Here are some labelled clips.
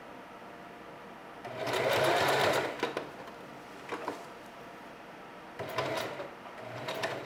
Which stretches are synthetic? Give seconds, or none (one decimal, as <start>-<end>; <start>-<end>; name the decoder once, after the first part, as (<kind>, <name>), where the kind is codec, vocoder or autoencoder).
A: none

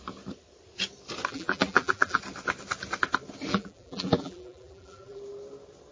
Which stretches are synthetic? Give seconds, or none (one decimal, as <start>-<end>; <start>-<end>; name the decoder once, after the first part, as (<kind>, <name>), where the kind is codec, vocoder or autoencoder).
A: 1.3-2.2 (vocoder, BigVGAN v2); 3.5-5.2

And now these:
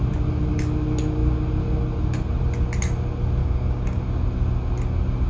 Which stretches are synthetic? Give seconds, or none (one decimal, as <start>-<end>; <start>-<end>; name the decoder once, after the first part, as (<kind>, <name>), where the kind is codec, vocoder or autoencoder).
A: 3.4-4.0 (codec, DAC)

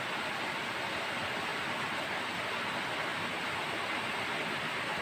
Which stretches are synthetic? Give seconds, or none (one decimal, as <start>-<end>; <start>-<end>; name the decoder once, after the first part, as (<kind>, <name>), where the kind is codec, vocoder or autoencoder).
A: 1.5-2.2 (vocoder, BigVGAN v2)

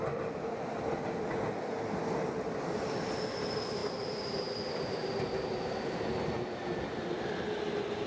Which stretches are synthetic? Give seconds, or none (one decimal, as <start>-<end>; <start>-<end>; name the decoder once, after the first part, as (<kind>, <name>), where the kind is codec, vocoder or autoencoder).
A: none

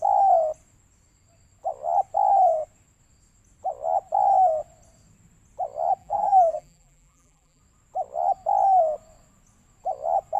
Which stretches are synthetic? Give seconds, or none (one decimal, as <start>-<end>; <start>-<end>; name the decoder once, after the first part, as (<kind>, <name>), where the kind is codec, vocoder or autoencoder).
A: 6.0-7.6 (vocoder, BigVGAN v2)

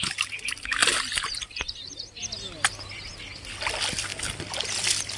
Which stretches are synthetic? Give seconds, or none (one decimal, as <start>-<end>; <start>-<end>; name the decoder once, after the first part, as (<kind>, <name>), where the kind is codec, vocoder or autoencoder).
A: 0.8-1.8 (vocoder, BigVGAN v2)